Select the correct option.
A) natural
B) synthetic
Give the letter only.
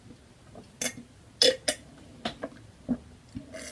A